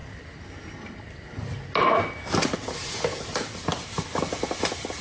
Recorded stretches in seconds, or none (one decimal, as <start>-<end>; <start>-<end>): 0.0-5.0

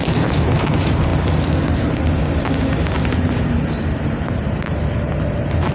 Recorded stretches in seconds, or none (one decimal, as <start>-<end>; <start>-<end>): 0.0-5.7

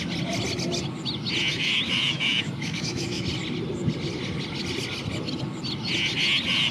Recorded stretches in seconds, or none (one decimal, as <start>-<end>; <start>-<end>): 0.0-1.5; 3.2-6.7

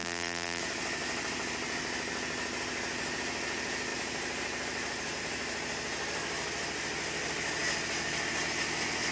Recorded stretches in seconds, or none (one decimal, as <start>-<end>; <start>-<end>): 0.6-9.1

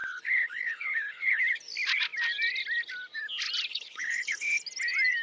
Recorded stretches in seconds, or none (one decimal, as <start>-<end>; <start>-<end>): 1.4-3.7; 4.6-5.2

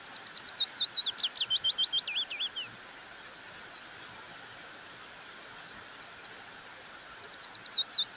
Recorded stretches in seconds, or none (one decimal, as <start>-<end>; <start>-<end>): 0.0-8.2

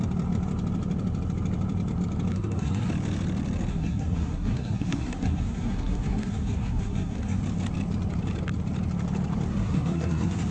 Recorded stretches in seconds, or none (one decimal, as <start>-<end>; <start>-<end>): 0.0-2.3; 2.9-3.7; 7.4-9.5

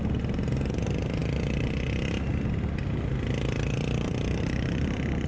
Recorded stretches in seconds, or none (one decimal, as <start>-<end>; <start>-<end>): 0.0-5.3